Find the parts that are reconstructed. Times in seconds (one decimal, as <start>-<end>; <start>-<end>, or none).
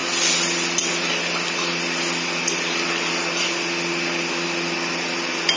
none